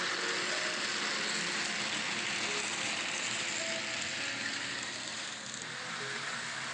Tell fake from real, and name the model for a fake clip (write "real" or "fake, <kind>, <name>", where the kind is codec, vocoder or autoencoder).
real